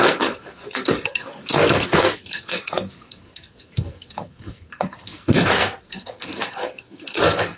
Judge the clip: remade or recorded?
remade